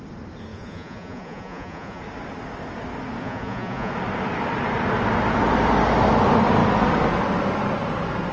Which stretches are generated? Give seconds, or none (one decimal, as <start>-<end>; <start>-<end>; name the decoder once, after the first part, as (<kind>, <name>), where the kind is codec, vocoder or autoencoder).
0.5-2.0 (vocoder, Vocos); 3.2-3.9